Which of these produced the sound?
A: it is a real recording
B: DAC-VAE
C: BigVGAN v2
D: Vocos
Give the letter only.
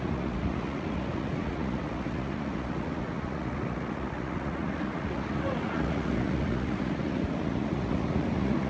D